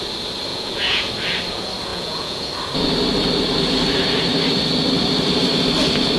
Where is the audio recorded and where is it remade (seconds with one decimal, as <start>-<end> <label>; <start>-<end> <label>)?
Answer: 0.0-0.5 recorded; 0.5-1.1 remade; 1.1-1.9 recorded; 1.9-2.5 remade; 2.5-6.2 recorded